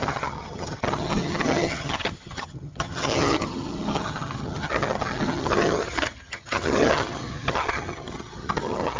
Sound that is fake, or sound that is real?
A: fake